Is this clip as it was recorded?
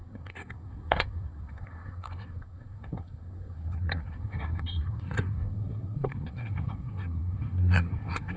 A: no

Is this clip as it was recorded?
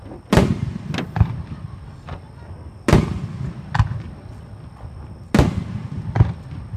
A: yes